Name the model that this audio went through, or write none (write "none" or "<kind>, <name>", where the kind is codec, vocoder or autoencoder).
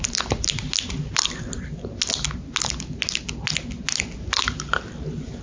none